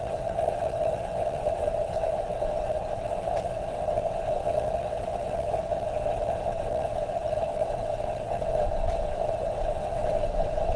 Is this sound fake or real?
fake